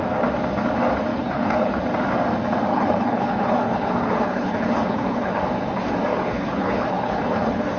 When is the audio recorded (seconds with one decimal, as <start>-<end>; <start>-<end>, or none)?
0.0-1.1; 1.8-2.7; 5.4-6.1